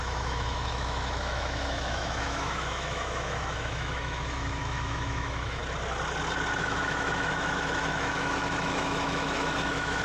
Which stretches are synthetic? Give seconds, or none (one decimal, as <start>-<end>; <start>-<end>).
0.0-5.6; 6.6-10.0

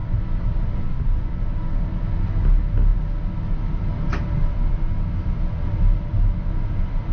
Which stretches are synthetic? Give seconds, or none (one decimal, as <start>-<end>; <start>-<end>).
none

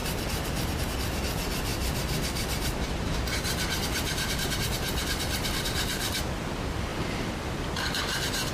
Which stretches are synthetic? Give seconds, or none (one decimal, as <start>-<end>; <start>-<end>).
1.7-6.2